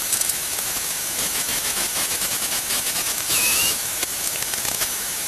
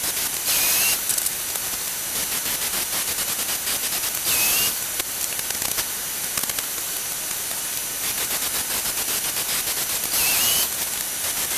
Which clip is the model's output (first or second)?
first